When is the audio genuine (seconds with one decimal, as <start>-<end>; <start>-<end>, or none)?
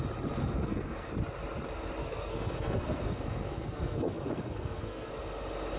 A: 0.0-0.4; 1.1-2.0; 5.1-5.8